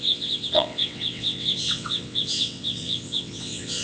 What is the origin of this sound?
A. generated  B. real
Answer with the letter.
A